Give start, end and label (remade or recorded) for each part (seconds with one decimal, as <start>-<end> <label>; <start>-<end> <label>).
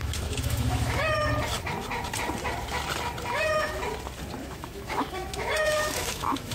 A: 0.0-1.0 remade; 1.0-3.3 recorded; 3.3-3.8 remade; 3.8-4.4 recorded; 4.4-6.5 remade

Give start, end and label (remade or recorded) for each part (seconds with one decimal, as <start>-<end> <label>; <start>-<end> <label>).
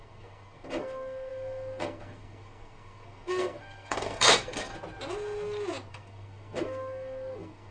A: 0.0-4.7 remade; 4.7-5.9 recorded; 5.9-7.7 remade